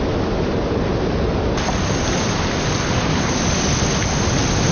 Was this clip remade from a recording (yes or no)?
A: no